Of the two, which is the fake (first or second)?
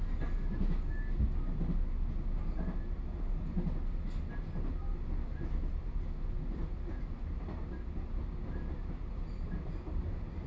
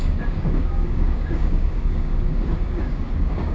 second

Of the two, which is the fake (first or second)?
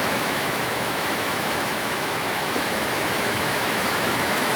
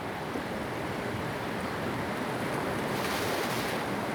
first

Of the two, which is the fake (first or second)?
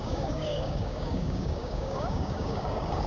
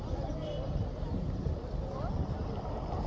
first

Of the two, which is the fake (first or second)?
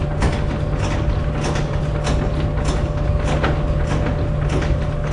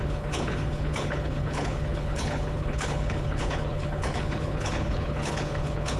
second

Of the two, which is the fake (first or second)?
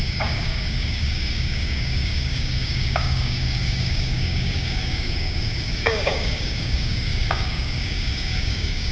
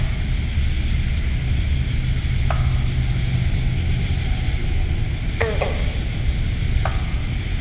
first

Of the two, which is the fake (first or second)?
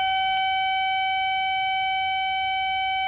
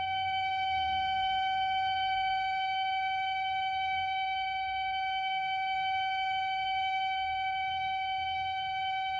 second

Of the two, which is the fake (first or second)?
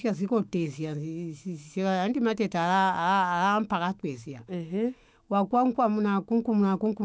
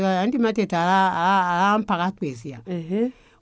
first